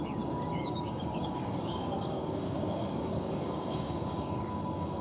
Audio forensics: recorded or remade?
remade